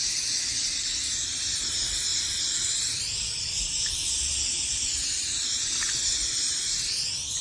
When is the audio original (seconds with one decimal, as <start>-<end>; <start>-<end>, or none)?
0.0-7.4

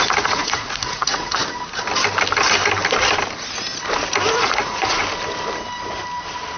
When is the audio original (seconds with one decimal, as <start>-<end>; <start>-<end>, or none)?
1.4-4.4; 5.0-6.6

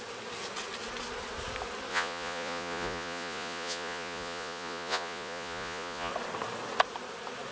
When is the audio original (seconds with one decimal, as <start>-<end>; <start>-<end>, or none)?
0.0-1.9; 6.1-7.5

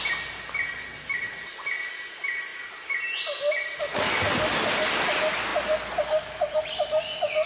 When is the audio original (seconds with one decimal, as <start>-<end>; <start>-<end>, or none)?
0.0-7.5

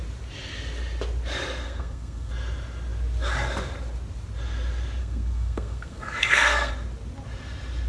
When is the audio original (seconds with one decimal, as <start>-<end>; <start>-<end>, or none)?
0.0-1.6; 2.3-5.0; 6.7-7.9

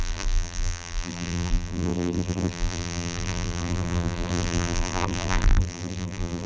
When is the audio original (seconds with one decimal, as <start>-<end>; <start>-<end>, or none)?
none

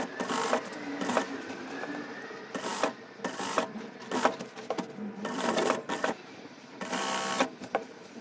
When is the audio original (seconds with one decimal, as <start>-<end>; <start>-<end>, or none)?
0.0-8.2

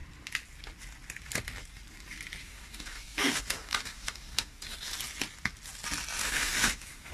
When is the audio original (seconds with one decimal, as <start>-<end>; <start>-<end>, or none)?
0.0-2.4; 4.9-6.2